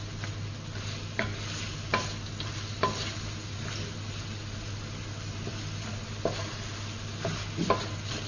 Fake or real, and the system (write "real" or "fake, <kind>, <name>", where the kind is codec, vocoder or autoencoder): real